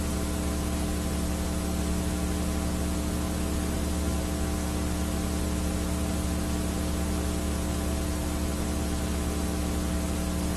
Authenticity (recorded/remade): recorded